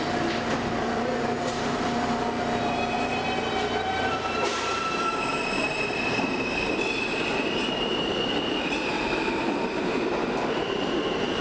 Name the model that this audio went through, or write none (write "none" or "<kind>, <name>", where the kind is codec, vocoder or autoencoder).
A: vocoder, BigVGAN v2